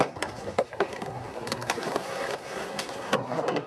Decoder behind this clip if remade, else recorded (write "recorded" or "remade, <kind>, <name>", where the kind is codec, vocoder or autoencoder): remade, codec, SNAC